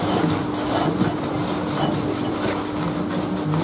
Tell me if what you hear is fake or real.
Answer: real